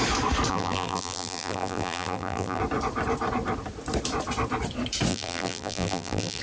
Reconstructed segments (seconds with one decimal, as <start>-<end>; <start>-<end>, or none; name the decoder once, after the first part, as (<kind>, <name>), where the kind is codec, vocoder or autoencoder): 0.5-2.6 (vocoder, BigVGAN v2); 5.1-6.4